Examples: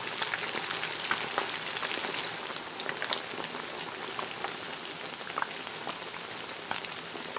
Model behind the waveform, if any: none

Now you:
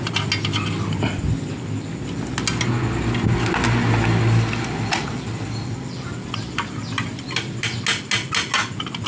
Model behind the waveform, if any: none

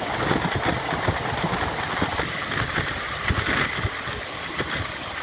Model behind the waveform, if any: none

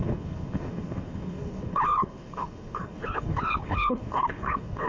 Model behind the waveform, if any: codec, HILCodec